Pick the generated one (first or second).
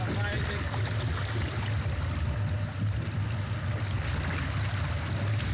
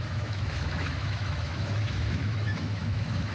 second